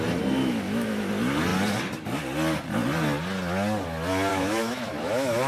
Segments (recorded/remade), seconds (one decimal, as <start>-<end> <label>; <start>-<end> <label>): 0.0-0.4 recorded; 0.4-1.1 remade; 1.1-4.3 recorded; 4.3-5.5 remade